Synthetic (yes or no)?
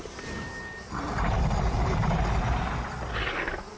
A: no